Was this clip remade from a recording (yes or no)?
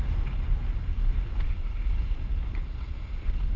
no